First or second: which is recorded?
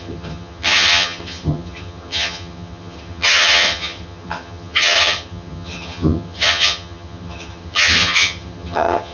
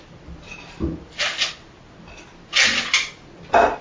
second